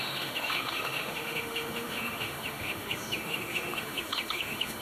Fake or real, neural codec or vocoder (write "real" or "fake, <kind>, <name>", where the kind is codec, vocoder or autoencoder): fake, autoencoder, DAC-VAE